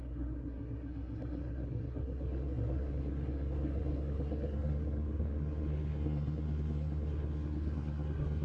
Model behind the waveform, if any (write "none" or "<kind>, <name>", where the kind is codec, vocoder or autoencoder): codec, SNAC